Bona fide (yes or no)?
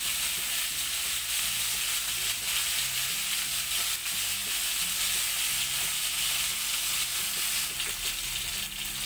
yes